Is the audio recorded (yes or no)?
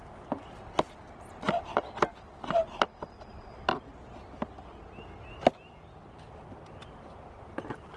yes